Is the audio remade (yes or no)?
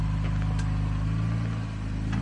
no